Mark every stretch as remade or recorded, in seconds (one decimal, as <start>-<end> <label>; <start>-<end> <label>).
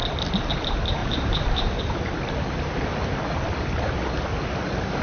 0.0-1.0 recorded; 1.0-1.8 remade; 1.8-5.0 recorded